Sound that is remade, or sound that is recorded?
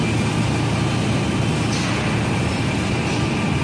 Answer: recorded